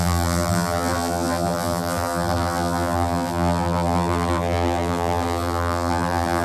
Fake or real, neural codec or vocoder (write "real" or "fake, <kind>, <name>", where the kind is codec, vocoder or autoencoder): fake, vocoder, BigVGAN v2